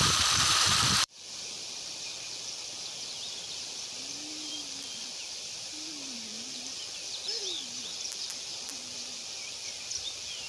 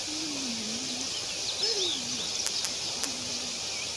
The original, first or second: second